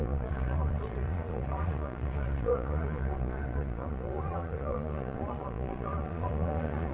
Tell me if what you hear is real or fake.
fake